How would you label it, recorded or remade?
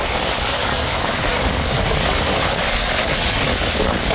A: remade